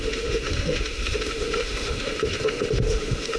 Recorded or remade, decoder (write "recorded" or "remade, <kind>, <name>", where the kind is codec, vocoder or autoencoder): remade, autoencoder, DAC-VAE